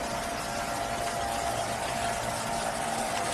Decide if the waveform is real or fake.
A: real